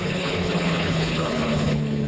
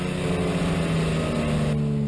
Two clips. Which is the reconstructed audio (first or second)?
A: first